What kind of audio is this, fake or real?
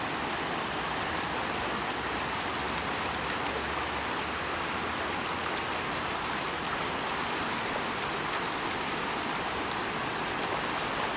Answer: real